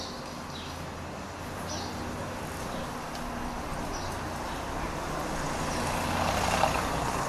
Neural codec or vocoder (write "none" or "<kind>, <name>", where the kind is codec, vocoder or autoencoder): none